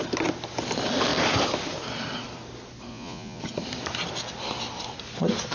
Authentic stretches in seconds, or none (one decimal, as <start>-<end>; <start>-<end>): 0.0-2.9; 3.4-5.5